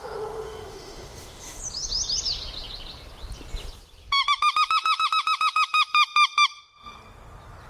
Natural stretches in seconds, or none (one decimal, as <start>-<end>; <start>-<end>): 1.6-7.7